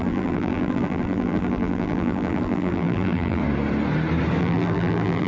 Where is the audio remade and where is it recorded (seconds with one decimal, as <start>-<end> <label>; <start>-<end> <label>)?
0.0-3.4 remade; 3.4-4.4 recorded; 4.4-5.3 remade